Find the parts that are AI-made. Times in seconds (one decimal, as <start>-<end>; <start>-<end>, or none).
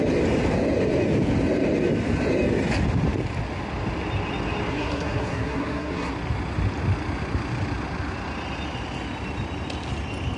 4.7-6.1